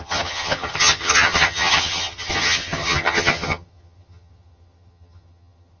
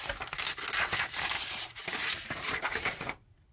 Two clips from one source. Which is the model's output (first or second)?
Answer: first